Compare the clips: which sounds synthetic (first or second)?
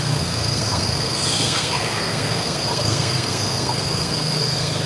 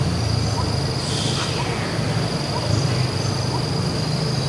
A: first